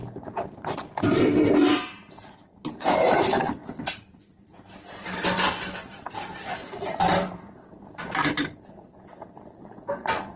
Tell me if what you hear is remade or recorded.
remade